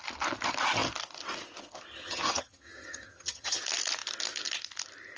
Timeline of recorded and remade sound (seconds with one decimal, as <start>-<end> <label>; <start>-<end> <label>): 0.0-1.9 recorded; 1.9-3.6 remade; 3.6-5.2 recorded